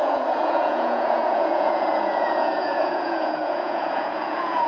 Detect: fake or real fake